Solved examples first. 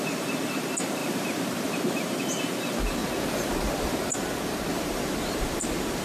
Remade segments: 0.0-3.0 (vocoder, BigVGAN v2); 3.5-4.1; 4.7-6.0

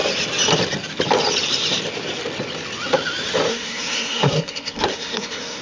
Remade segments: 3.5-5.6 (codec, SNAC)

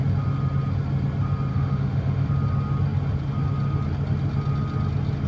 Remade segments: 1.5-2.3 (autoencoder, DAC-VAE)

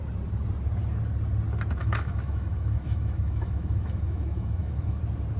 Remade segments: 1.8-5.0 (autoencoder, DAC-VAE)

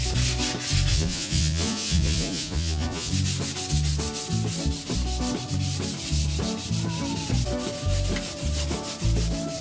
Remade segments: 0.9-3.1 (vocoder, Vocos)

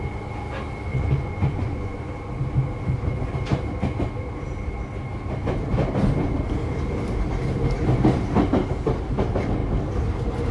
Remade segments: 0.9-2.0 (vocoder, Vocos)

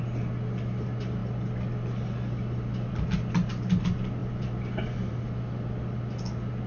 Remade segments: none